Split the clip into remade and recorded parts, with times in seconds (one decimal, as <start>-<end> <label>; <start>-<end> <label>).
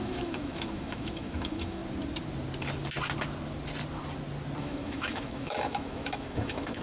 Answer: 0.0-1.8 remade; 1.8-4.6 recorded; 4.6-6.8 remade